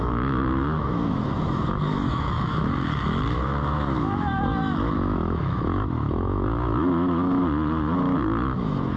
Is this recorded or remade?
remade